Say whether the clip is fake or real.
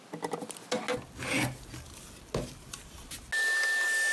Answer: real